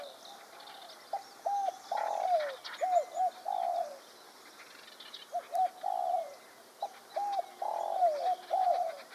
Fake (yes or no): no